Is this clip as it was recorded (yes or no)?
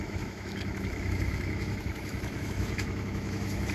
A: no